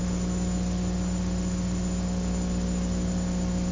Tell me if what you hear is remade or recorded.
recorded